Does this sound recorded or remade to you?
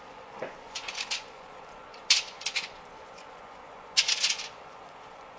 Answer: remade